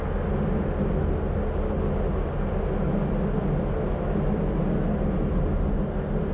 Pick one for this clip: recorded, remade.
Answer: recorded